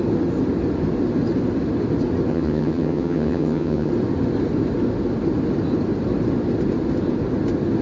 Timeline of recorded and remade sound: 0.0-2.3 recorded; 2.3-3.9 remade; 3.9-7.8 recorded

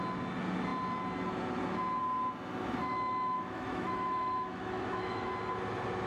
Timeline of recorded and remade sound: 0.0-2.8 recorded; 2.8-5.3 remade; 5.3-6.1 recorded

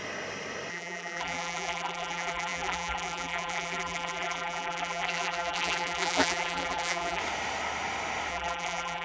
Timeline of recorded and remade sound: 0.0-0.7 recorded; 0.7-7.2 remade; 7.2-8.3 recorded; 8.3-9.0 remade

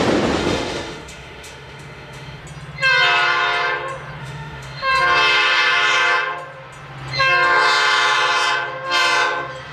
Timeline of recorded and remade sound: 0.0-0.4 recorded; 0.4-2.4 remade; 2.4-4.2 recorded; 4.2-4.9 remade; 4.9-9.7 recorded